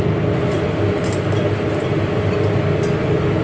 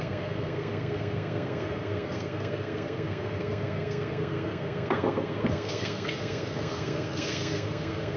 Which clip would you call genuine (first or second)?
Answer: first